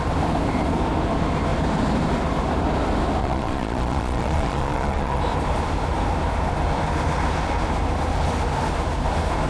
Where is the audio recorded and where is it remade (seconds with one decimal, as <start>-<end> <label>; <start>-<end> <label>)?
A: 0.0-3.2 recorded; 3.2-5.2 remade; 5.2-9.5 recorded